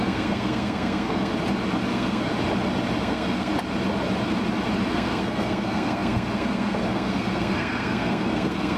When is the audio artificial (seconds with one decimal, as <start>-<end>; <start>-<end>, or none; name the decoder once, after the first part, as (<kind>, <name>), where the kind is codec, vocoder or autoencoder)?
0.0-1.3 (codec, SNAC); 1.9-2.3; 3.0-3.5; 4.9-8.8